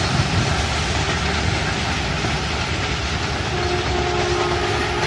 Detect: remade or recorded recorded